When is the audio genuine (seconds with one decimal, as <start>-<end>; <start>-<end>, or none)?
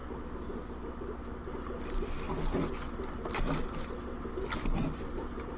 0.0-5.6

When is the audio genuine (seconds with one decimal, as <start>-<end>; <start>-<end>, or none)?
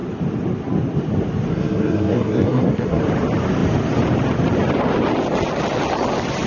0.0-1.5; 3.0-6.5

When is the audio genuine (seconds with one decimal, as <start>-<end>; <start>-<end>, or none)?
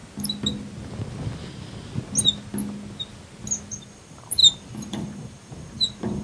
0.0-3.7